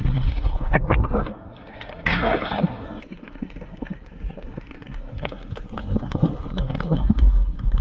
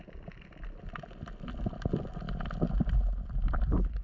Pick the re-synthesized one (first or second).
first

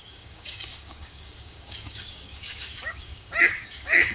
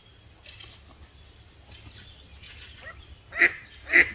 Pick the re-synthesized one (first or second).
first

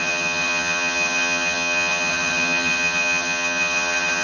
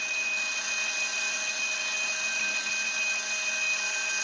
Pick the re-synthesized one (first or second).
first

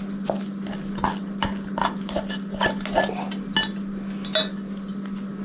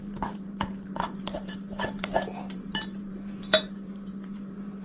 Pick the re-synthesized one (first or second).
second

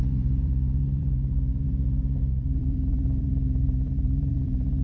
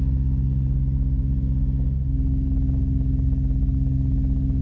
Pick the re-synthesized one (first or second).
first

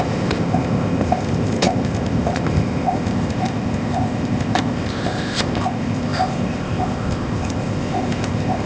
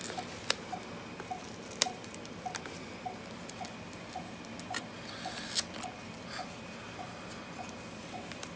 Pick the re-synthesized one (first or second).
first